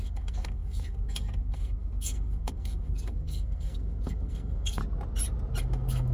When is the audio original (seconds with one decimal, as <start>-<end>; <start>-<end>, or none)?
4.8-5.6